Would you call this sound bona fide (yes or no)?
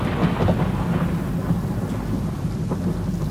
yes